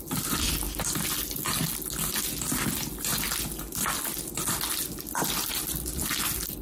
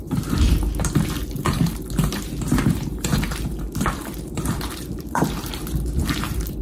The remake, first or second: second